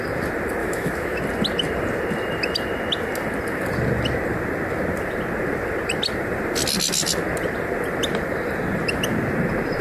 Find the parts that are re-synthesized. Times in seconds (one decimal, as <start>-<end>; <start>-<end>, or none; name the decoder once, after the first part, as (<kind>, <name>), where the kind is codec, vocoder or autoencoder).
0.6-1.2 (autoencoder, DAC-VAE)